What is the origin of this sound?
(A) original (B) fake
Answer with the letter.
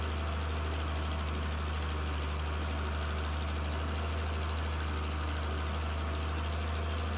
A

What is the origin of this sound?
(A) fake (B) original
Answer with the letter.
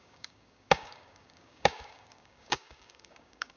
A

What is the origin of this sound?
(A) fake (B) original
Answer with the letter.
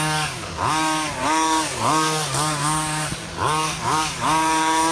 A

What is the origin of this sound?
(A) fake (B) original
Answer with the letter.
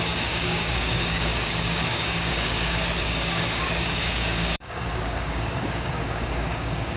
A